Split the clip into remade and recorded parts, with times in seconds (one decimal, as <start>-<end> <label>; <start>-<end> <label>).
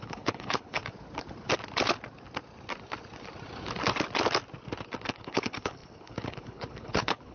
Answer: 0.0-0.8 remade; 0.8-5.1 recorded; 5.1-7.3 remade